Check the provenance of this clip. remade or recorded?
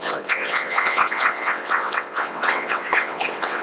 remade